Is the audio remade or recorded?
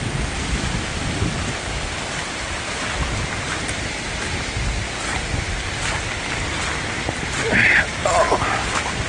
recorded